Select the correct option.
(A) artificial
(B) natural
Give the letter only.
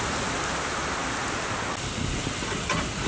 B